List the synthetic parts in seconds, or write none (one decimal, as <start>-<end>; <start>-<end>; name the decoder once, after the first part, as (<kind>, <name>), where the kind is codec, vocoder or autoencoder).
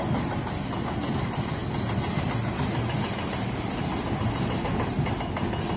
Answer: none